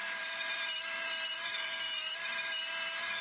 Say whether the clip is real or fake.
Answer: fake